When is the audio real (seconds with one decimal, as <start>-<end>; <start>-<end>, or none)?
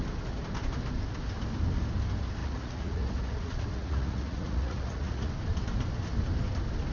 0.0-2.4; 5.3-6.9